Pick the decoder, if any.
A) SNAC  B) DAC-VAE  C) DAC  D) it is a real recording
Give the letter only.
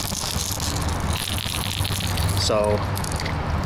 D